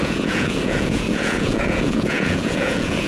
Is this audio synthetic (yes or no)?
yes